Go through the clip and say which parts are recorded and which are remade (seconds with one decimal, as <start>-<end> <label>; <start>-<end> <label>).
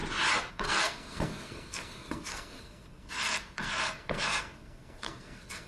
0.0-0.5 recorded; 0.5-5.7 remade